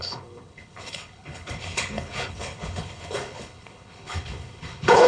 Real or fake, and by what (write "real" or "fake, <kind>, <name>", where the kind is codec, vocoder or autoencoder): fake, codec, HILCodec